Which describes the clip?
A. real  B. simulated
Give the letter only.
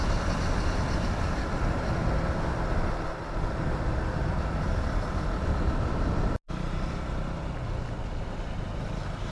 A